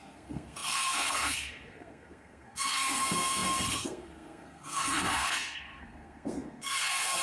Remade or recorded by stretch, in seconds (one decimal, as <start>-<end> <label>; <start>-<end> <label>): 0.0-7.2 remade